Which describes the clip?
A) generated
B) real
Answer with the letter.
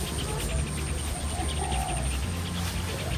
B